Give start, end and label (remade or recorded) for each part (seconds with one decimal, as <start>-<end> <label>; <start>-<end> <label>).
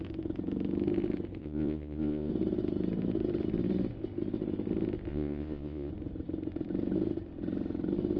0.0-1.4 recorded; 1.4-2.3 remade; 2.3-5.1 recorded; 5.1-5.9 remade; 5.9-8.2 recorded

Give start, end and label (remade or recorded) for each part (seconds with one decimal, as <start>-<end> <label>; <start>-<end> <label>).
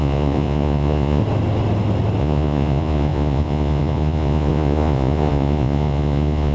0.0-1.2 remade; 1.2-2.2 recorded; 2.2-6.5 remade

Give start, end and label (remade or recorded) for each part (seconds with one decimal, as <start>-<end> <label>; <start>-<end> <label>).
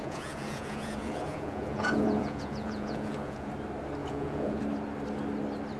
0.0-3.5 remade; 3.5-4.0 recorded; 4.0-4.6 remade; 4.6-5.8 recorded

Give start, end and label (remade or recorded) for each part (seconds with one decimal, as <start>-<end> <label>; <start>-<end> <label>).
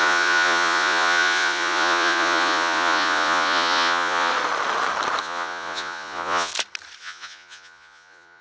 0.0-4.3 remade; 4.3-5.2 recorded; 5.2-6.5 remade; 6.5-7.0 recorded; 7.0-8.4 remade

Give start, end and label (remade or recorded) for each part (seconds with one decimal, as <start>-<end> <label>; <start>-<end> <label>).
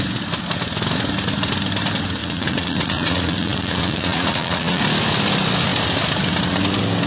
0.0-2.2 recorded; 2.2-4.8 remade; 4.8-7.1 recorded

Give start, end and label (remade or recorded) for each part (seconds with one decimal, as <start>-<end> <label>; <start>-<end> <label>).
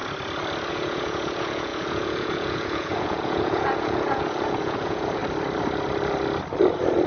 0.0-0.7 recorded; 0.7-5.2 remade; 5.2-7.1 recorded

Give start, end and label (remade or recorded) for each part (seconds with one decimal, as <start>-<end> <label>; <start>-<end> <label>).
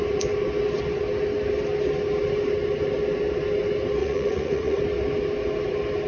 0.0-4.0 recorded; 4.0-4.8 remade; 4.8-6.1 recorded